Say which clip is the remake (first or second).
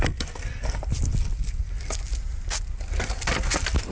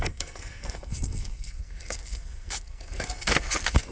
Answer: second